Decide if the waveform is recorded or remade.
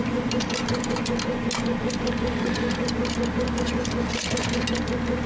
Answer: recorded